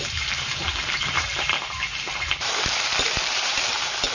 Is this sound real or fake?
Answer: fake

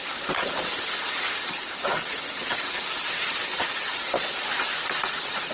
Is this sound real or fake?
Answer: real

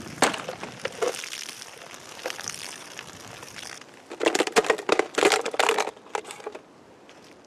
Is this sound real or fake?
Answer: real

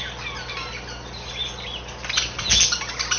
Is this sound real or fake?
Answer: real